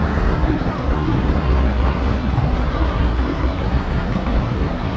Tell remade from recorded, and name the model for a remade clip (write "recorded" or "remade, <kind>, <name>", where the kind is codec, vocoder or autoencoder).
remade, codec, SNAC